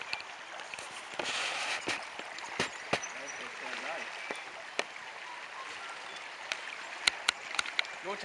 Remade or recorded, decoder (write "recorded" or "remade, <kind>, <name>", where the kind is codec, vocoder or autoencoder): recorded